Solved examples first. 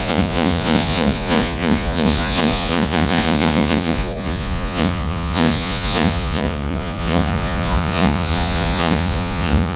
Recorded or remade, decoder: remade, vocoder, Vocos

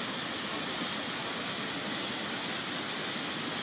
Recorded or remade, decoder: recorded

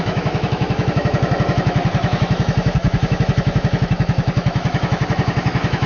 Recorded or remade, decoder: remade, autoencoder, DAC-VAE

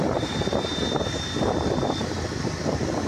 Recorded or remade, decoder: recorded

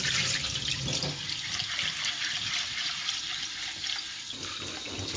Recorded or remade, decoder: recorded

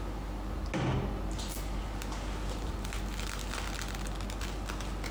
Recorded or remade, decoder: recorded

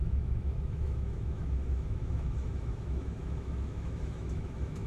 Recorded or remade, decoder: remade, autoencoder, DAC-VAE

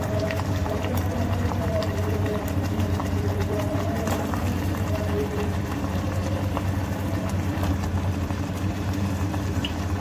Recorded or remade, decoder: remade, vocoder, BigVGAN v2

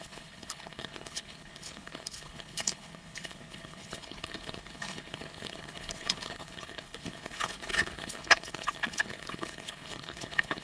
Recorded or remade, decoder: remade, codec, HILCodec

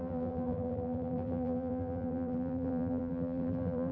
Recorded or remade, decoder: remade, vocoder, BigVGAN v2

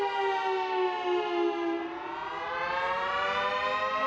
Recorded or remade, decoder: recorded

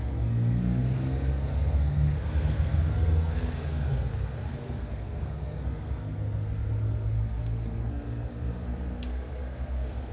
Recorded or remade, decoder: remade, codec, SNAC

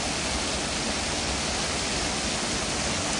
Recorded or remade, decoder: recorded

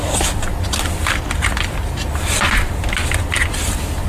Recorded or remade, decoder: recorded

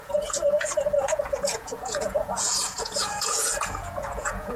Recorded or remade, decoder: remade, vocoder, Vocos